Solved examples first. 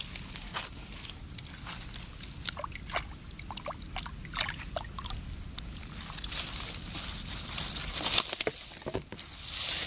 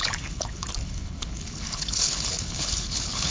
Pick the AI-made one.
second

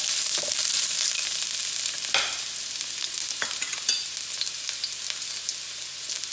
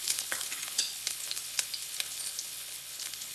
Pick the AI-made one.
second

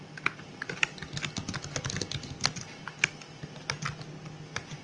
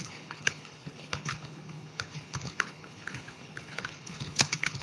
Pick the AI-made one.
second